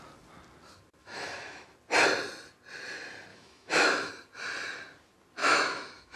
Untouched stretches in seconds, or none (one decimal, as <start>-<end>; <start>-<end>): 0.0-1.0; 1.7-3.3; 4.1-5.4